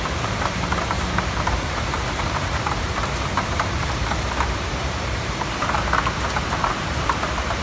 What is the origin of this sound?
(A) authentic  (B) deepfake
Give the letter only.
B